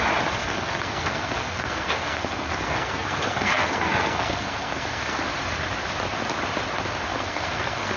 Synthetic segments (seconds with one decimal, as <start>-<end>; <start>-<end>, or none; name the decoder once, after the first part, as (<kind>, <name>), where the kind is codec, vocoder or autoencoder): 0.4-5.2 (codec, SNAC); 7.1-8.0